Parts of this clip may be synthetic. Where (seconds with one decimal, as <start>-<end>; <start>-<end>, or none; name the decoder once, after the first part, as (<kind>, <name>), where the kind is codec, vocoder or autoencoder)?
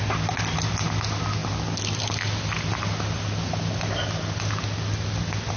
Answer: none